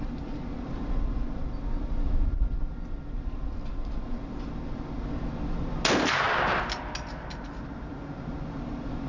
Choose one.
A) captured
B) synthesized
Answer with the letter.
A